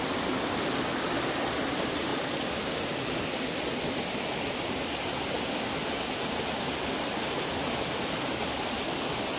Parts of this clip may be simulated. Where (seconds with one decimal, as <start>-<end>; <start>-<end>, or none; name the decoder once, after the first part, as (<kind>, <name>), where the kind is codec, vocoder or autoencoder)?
none